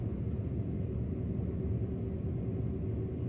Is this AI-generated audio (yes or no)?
no